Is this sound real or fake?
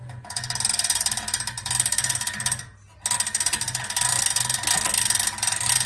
real